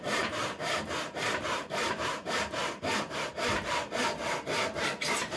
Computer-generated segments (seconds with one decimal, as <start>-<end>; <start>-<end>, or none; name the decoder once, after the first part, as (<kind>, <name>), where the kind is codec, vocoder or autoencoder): 0.0-2.6 (vocoder, BigVGAN v2); 3.3-4.2; 4.8-5.4